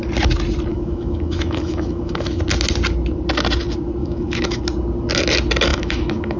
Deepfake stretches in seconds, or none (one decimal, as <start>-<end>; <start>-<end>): 0.7-2.4; 4.0-4.6; 5.7-6.4

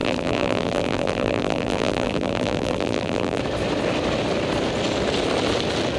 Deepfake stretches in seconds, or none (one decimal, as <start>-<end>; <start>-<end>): 0.0-3.4